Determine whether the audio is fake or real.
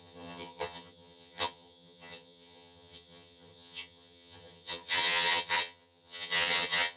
fake